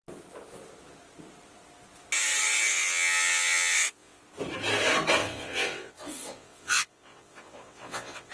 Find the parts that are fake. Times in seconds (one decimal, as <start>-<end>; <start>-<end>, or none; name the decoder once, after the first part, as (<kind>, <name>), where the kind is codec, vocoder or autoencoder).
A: 2.7-4.2 (vocoder, WaveNeXt); 5.2-8.3